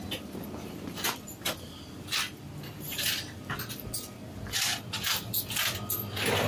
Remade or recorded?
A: recorded